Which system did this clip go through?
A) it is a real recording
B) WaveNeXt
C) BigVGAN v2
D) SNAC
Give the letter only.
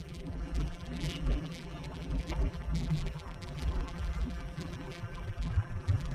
C